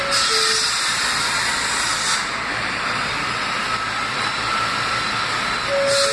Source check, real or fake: real